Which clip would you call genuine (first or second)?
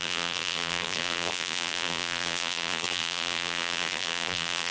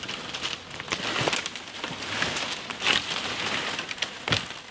second